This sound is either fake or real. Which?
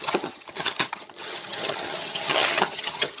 fake